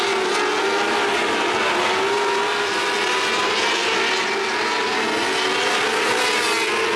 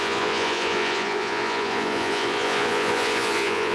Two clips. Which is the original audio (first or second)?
first